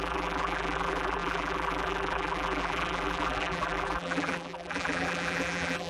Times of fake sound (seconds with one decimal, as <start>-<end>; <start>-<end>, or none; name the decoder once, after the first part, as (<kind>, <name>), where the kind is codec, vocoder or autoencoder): 0.0-5.9 (vocoder, BigVGAN v2)